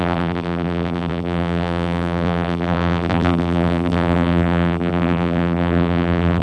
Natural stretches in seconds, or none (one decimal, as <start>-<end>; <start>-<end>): none